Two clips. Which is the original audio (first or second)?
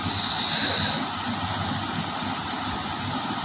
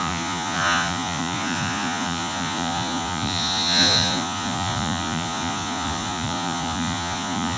first